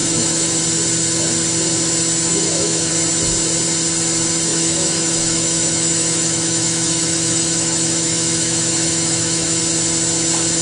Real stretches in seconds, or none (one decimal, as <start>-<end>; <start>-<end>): 0.6-2.3; 2.9-4.5; 9.6-10.6